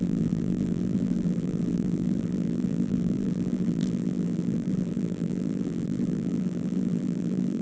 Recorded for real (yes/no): no